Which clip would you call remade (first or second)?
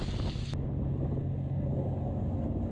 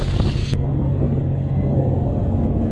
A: second